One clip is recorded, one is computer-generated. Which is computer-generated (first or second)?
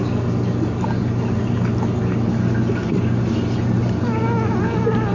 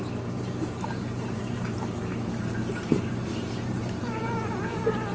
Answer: second